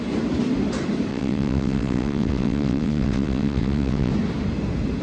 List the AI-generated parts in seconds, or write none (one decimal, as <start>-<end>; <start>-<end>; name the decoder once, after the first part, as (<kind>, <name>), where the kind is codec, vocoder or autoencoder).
1.1-4.1 (vocoder, WaveNeXt)